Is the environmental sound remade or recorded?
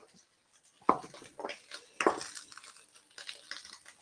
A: recorded